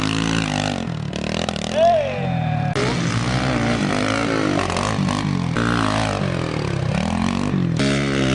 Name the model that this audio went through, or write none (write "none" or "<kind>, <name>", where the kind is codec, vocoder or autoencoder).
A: none